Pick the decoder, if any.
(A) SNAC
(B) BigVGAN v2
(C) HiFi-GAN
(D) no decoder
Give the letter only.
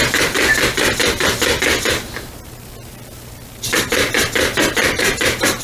D